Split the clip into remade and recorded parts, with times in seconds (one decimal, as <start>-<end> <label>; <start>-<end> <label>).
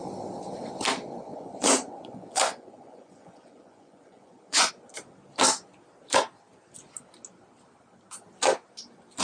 0.0-1.3 recorded; 1.3-4.7 remade; 4.7-9.2 recorded